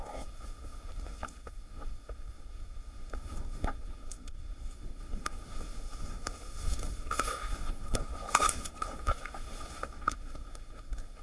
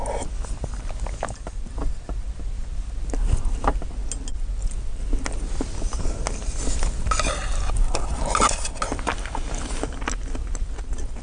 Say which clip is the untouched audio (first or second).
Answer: second